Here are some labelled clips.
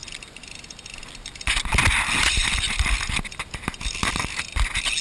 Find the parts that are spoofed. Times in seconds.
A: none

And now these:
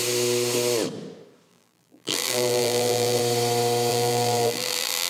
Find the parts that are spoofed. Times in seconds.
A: 1.5-3.2 (vocoder, BigVGAN v2); 3.9-5.1

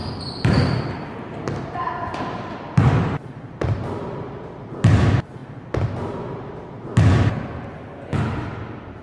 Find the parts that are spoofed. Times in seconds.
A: 0.0-5.4 (vocoder, BigVGAN v2); 8.2-9.0

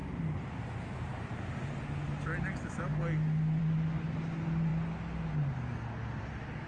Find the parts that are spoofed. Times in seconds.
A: none

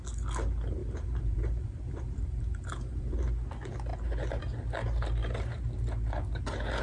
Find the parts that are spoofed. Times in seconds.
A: 0.8-3.3 (vocoder, BigVGAN v2)